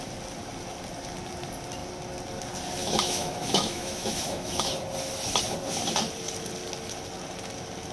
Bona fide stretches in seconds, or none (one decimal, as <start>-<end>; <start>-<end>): 0.0-2.8; 4.7-7.9